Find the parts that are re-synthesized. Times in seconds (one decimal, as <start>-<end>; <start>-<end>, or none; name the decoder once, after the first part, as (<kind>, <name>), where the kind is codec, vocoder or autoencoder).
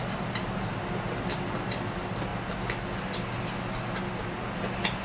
none